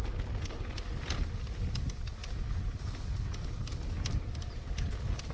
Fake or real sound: real